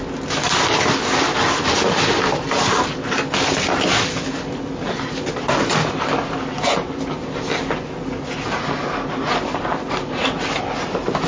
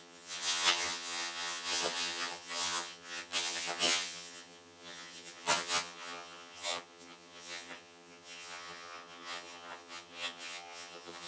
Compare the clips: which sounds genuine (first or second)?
first